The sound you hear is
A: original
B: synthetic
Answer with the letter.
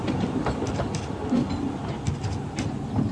A